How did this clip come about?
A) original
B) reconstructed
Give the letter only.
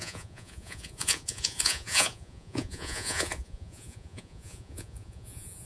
B